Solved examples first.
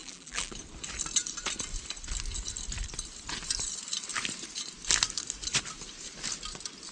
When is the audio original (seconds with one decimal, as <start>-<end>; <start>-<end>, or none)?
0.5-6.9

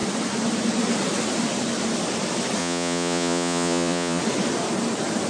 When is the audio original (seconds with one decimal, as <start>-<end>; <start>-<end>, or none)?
0.0-2.6; 4.2-5.3

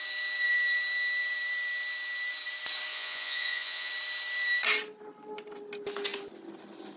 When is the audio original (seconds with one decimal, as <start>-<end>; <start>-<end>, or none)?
0.0-2.9; 3.9-7.0